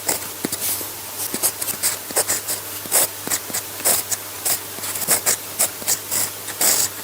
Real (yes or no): yes